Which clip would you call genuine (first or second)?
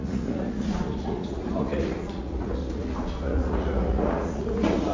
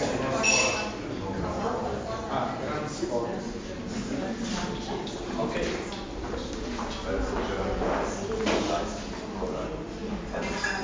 second